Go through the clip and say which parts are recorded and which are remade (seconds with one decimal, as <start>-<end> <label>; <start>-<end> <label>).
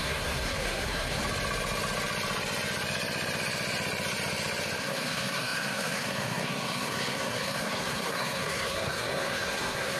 0.0-1.2 remade; 1.2-4.8 recorded; 4.8-10.0 remade